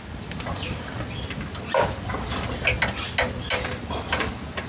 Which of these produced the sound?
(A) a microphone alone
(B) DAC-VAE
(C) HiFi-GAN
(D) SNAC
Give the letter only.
A